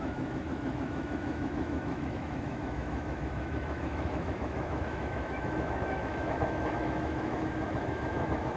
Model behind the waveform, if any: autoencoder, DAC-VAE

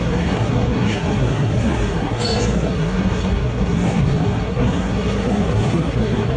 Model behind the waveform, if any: codec, SNAC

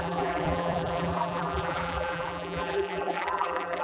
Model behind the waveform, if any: vocoder, BigVGAN v2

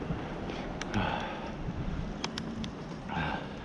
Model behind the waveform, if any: vocoder, BigVGAN v2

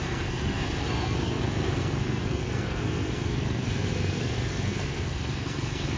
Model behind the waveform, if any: codec, SNAC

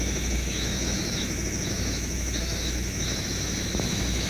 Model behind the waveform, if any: autoencoder, DAC-VAE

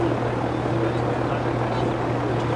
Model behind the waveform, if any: none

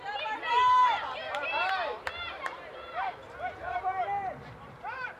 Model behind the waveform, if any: vocoder, BigVGAN v2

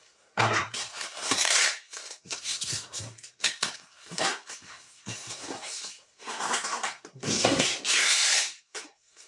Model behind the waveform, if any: codec, SNAC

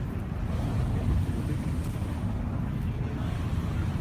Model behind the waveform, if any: none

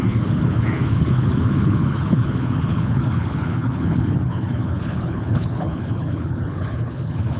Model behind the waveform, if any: codec, HILCodec